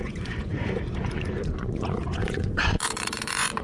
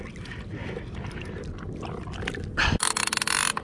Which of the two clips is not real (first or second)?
first